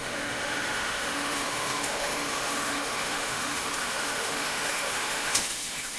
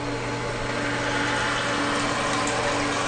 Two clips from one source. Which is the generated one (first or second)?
first